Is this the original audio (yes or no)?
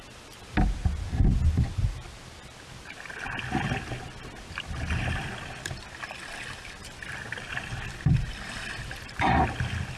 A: yes